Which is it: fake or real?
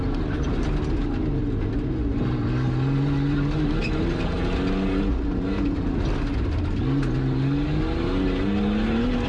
real